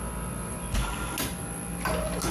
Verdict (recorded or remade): recorded